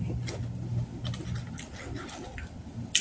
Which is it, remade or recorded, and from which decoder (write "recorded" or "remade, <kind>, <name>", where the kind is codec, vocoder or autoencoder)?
recorded